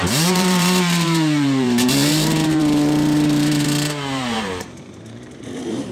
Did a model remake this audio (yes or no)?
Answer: yes